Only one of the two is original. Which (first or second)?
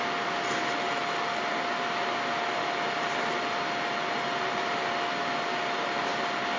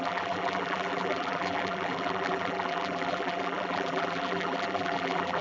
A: first